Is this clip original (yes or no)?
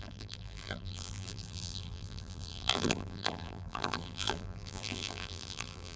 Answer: no